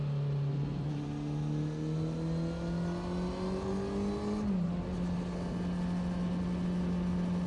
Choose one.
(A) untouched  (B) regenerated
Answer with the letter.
A